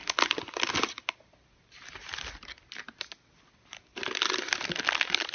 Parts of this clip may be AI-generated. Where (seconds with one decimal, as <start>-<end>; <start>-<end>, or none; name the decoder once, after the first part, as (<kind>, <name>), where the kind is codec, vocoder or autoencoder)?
2.4-3.9 (vocoder, BigVGAN v2)